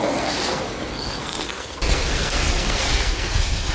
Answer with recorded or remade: remade